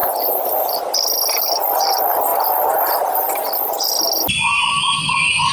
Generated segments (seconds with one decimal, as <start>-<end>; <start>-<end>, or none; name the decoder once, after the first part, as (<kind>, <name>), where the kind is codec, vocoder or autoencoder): none